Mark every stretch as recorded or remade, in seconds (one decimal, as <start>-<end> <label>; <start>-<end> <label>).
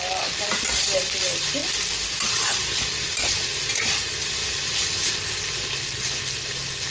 0.0-6.9 recorded